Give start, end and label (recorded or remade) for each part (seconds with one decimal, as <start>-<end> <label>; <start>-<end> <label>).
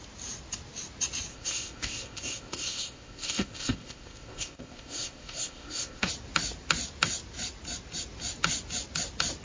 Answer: 0.0-1.3 recorded; 1.3-6.1 remade; 6.1-9.4 recorded